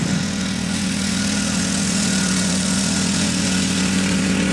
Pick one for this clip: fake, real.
fake